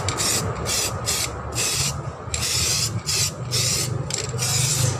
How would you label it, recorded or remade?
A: recorded